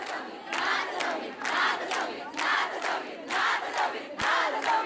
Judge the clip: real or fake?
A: real